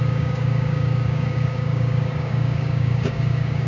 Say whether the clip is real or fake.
fake